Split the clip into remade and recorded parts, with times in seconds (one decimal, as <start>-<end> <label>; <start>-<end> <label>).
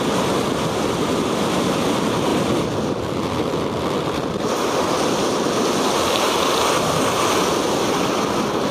0.0-8.7 recorded